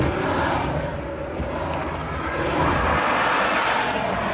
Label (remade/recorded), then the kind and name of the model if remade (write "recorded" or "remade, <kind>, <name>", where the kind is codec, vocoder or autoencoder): remade, vocoder, BigVGAN v2